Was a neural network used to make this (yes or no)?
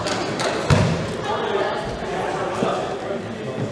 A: no